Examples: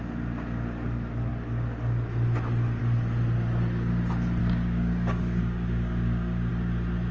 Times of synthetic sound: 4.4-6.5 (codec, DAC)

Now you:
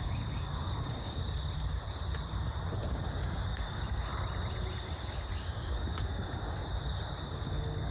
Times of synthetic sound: 0.0-1.2 (codec, DAC); 2.9-4.1; 4.8-6.6; 7.2-7.9

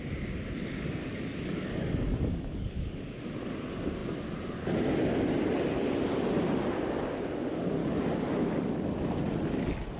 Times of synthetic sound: 1.0-3.2 (codec, DAC); 7.8-8.5

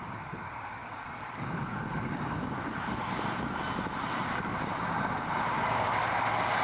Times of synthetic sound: 0.0-3.0 (codec, DAC); 4.1-4.5; 5.3-6.0

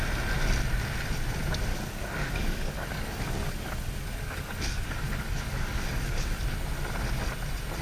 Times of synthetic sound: 1.7-6.4 (codec, DAC)